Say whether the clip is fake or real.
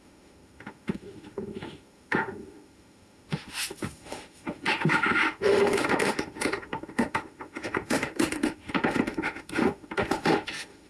fake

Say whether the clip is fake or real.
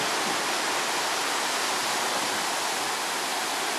real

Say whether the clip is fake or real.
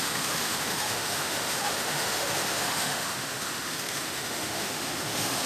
fake